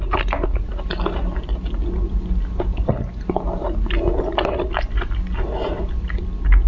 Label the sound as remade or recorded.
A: recorded